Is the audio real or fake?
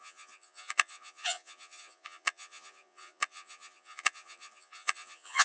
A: fake